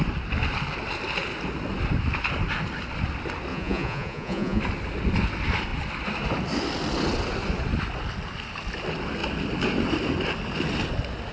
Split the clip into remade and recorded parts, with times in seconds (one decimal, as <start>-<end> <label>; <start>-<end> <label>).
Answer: 0.0-3.5 recorded; 3.5-4.6 remade; 4.6-11.3 recorded